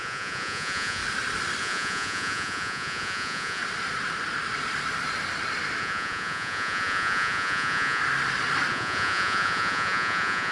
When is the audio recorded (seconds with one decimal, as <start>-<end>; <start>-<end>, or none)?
1.0-1.6; 3.6-5.8; 8.0-8.7